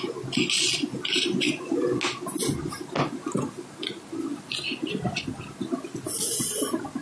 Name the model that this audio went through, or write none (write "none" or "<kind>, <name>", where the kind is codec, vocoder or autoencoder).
none